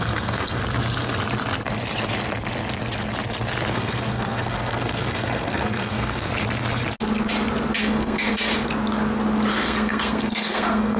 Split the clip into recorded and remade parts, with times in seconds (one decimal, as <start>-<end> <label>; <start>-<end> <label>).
0.0-0.6 remade; 0.6-3.7 recorded; 3.7-6.3 remade; 6.3-7.8 recorded; 7.8-8.5 remade; 8.5-9.5 recorded; 9.5-11.0 remade